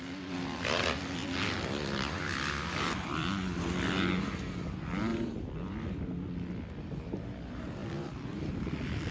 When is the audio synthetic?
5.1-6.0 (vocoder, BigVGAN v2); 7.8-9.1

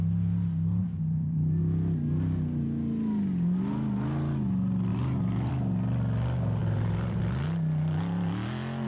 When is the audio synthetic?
0.8-1.6 (vocoder, BigVGAN v2); 4.9-5.5; 6.6-7.2

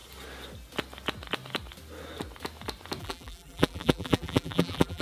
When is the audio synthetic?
3.0-5.0 (vocoder, BigVGAN v2)

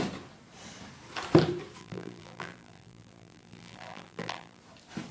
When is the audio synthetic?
1.8-4.6 (vocoder, BigVGAN v2)